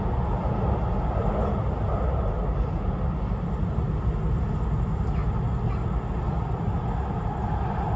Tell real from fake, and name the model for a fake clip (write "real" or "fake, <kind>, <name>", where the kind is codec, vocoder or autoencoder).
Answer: real